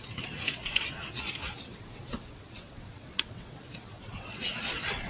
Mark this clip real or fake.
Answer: fake